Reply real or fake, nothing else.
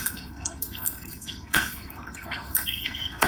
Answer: fake